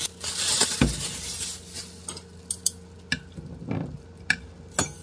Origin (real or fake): real